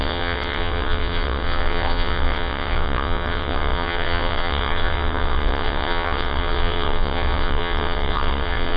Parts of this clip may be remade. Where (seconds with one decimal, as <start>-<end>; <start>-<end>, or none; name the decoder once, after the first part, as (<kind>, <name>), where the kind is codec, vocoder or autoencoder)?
0.0-8.8 (vocoder, WaveNeXt)